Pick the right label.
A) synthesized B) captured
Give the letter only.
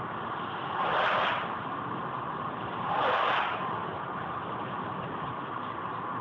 B